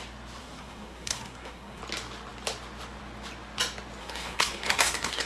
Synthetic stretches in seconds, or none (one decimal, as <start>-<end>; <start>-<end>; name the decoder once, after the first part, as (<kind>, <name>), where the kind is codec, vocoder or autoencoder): 0.4-1.8 (codec, SNAC); 4.0-5.3